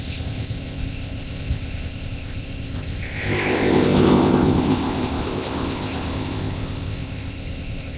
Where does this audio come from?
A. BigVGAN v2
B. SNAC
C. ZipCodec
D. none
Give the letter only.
C